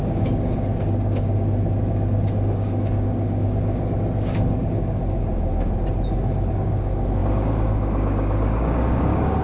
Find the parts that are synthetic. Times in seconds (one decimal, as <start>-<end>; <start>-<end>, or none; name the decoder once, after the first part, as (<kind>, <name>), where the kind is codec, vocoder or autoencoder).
0.0-5.5 (codec, DAC); 6.5-9.4